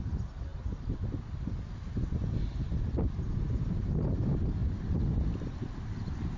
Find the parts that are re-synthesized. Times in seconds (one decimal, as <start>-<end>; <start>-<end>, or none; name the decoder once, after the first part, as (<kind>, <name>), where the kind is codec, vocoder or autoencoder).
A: none